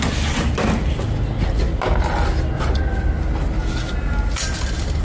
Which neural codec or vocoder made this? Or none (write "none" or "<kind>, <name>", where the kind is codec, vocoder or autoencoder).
none